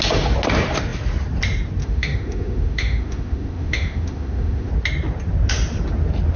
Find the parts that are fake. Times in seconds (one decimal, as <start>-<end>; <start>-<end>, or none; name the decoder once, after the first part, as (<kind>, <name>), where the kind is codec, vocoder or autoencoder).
1.8-4.7 (autoencoder, DAC-VAE)

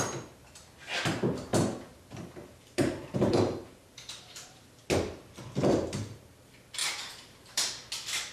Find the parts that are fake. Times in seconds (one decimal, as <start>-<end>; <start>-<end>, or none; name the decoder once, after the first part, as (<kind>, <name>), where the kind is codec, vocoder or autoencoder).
1.5-4.8 (vocoder, BigVGAN v2); 6.8-7.6

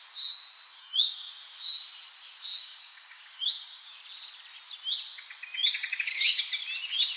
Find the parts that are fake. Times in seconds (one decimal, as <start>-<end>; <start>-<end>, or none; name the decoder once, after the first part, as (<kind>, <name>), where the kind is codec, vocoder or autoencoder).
0.8-1.3 (codec, DAC); 2.6-3.9; 5.6-6.4

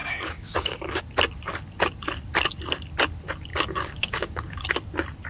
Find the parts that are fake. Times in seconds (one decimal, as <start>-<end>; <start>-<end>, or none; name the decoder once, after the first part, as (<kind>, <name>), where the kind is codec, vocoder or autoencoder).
0.0-1.0 (codec, DAC); 3.5-4.7

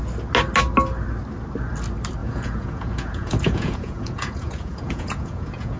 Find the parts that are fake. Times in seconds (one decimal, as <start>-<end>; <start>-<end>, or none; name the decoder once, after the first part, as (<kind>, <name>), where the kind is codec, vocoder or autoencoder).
2.2-5.8 (vocoder, Vocos)